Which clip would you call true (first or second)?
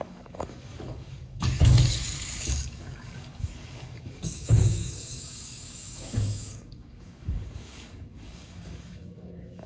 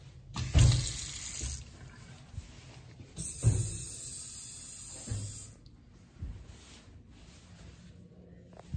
second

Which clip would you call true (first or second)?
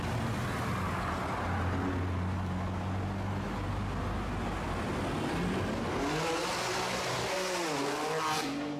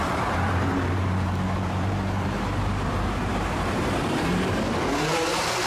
first